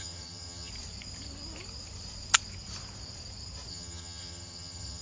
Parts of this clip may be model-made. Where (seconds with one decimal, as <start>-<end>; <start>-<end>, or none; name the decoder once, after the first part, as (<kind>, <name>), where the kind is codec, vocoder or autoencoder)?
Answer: 0.0-0.7 (vocoder, HiFi-GAN); 3.7-5.0